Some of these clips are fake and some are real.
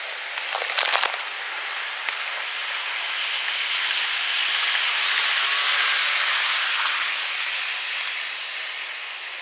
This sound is real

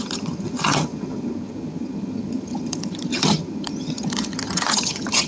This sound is fake